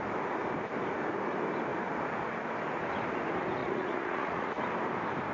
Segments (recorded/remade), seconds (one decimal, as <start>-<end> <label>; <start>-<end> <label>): 0.0-3.6 recorded; 3.6-4.6 remade; 4.6-5.3 recorded